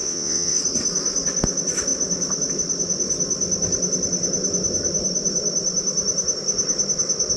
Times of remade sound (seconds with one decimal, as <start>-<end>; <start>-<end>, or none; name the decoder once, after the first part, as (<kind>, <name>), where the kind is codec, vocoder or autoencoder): 0.0-0.6 (vocoder, WaveNeXt)